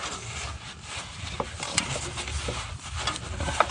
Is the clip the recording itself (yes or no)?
yes